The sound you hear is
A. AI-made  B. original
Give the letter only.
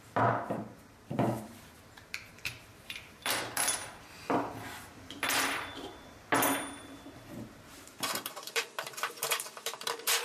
A